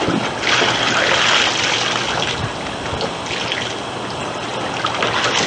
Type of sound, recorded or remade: recorded